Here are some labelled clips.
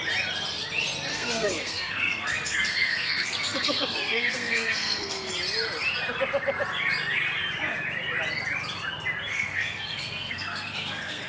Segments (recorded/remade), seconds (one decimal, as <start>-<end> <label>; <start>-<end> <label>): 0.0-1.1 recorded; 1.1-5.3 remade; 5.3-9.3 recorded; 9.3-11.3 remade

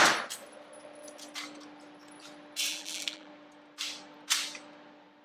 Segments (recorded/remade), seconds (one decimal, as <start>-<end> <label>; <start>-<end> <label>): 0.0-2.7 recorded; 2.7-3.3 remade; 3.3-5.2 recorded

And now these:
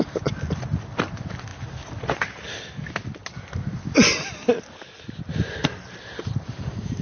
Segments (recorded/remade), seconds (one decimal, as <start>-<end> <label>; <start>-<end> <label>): 0.0-7.0 recorded

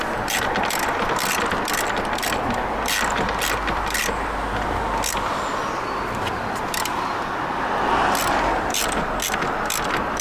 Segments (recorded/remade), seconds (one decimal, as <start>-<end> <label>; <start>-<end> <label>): 0.0-10.2 recorded